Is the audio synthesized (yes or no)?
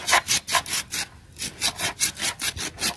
no